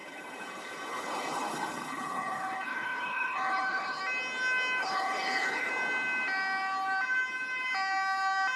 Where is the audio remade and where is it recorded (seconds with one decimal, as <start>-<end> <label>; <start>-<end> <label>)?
0.0-4.0 remade; 4.0-4.8 recorded; 4.8-5.7 remade; 5.7-8.6 recorded